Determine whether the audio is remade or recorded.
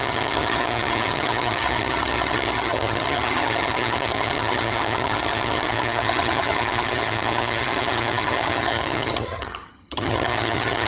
remade